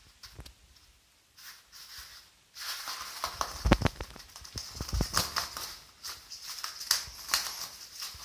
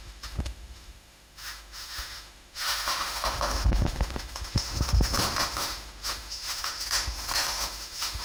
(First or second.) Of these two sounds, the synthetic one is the second